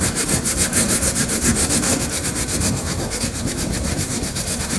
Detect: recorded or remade remade